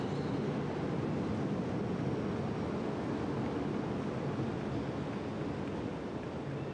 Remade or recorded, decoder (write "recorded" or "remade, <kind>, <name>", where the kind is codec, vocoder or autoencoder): recorded